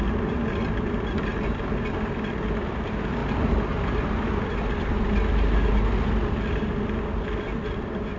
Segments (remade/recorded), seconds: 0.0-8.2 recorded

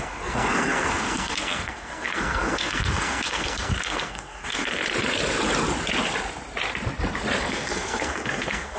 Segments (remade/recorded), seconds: 0.0-4.8 remade; 4.8-7.4 recorded; 7.4-8.8 remade

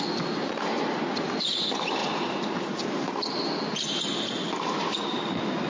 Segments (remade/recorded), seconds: 0.0-5.7 recorded

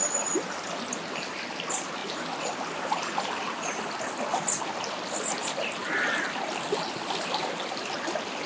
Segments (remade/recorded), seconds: 0.0-8.5 recorded

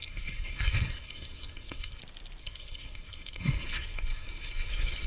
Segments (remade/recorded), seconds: 0.0-2.0 remade; 2.0-2.4 recorded; 2.4-5.1 remade